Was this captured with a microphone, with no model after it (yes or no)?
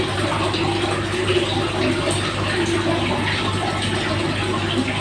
yes